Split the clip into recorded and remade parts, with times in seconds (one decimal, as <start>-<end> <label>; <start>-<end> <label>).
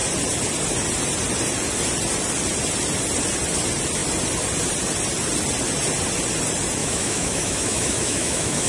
0.0-6.8 recorded; 6.8-8.7 remade